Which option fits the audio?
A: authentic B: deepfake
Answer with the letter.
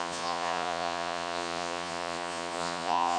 B